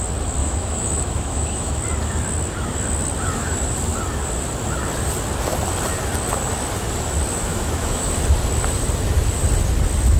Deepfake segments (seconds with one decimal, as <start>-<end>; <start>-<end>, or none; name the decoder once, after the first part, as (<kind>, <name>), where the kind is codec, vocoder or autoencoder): 0.4-1.8 (autoencoder, DAC-VAE); 7.5-8.1